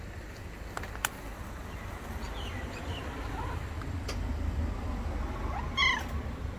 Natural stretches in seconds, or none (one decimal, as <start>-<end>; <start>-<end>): 0.0-2.5; 3.7-5.8

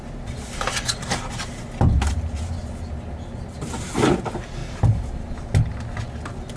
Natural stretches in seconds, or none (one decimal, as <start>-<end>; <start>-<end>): 0.0-4.6; 5.3-6.6